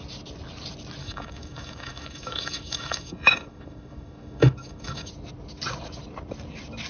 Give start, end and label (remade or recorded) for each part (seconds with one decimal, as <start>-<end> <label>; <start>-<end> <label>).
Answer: 0.0-1.0 recorded; 1.0-5.1 remade; 5.1-6.9 recorded